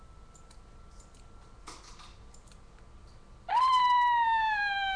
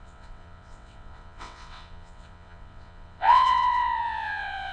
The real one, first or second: first